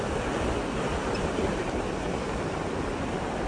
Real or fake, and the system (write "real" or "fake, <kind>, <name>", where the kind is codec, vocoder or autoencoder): real